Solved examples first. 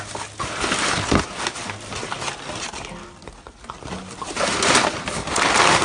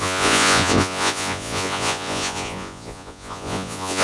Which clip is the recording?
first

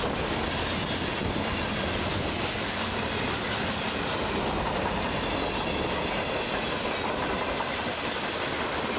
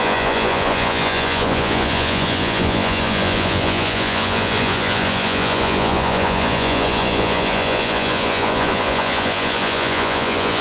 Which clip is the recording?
first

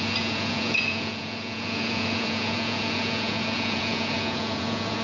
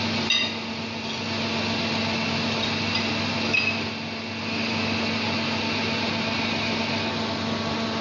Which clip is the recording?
second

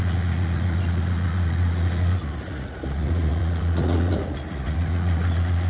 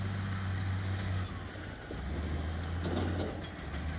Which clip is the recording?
second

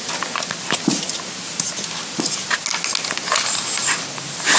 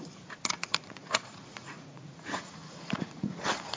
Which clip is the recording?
first